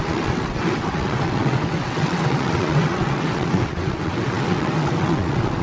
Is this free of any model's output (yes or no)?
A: no